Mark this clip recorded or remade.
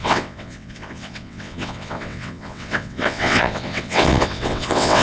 remade